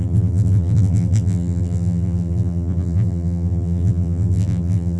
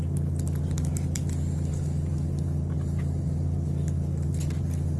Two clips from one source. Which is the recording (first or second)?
second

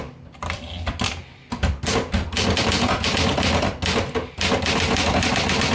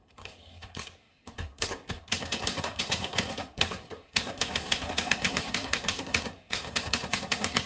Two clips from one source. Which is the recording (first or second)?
first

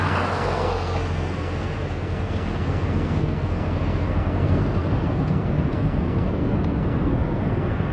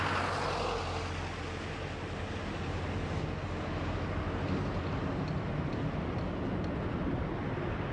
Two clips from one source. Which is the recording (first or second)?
second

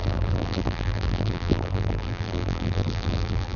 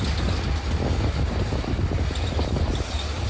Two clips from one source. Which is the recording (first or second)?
second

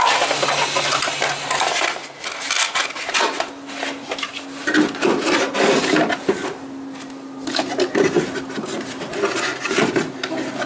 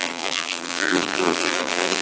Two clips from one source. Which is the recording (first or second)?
first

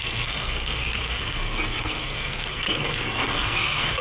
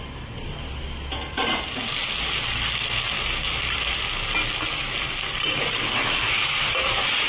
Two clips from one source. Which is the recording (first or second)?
second